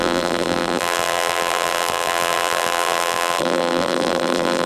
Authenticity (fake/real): fake